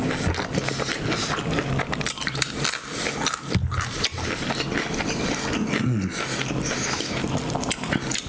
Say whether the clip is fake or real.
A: real